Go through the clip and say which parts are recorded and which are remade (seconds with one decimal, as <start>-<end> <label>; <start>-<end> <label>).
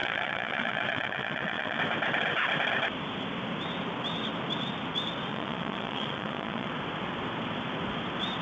0.0-1.8 remade; 1.8-5.3 recorded; 5.3-6.7 remade; 6.7-8.4 recorded